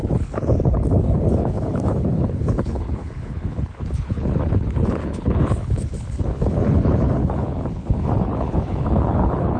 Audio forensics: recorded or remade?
remade